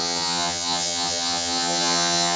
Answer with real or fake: fake